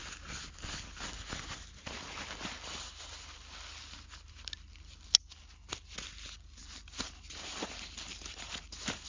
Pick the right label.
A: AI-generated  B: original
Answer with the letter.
B